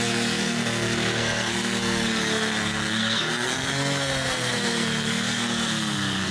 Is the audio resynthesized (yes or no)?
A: yes